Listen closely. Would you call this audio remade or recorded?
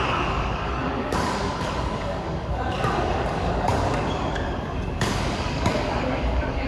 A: remade